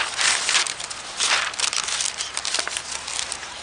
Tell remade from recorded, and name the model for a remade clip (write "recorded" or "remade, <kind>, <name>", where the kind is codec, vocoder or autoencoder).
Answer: recorded